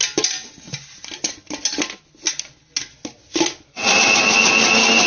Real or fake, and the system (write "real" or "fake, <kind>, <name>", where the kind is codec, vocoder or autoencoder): real